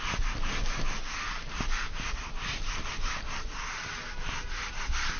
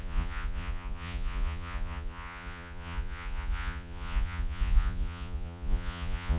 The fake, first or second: second